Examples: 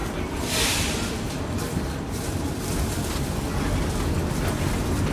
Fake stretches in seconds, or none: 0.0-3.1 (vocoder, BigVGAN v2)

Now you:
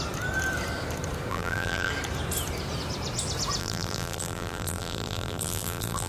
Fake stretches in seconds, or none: 1.3-1.9 (vocoder, BigVGAN v2); 3.6-6.1

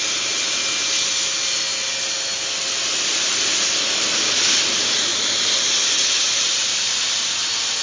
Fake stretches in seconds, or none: 0.0-0.6 (vocoder, BigVGAN v2); 4.5-5.1; 6.3-7.8